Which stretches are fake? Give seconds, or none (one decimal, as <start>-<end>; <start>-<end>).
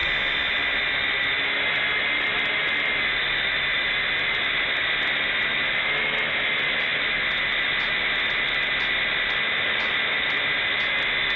none